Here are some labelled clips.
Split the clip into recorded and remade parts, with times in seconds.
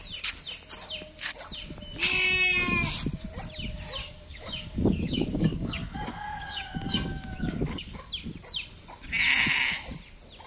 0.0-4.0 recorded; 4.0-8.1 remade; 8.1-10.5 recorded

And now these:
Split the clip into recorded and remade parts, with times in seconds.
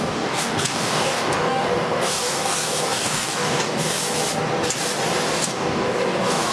0.0-4.0 remade; 4.0-5.3 recorded; 5.3-6.5 remade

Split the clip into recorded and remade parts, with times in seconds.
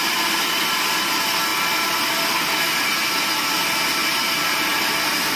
0.0-5.4 recorded